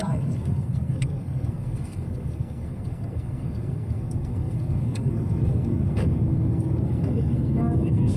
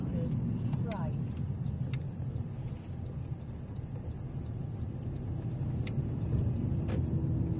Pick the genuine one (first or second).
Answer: second